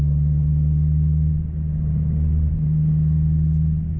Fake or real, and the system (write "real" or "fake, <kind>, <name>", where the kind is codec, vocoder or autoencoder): real